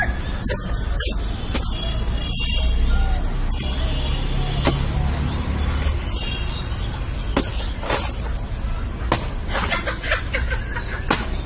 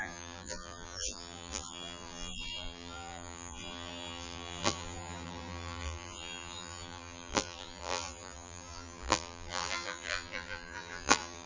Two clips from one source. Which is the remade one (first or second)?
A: second